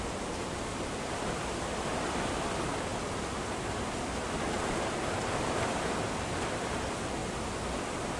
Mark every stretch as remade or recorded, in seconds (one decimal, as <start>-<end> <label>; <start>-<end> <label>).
0.0-7.2 remade; 7.2-8.2 recorded